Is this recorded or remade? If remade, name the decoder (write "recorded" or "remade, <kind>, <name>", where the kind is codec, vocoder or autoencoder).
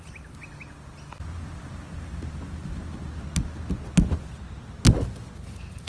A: recorded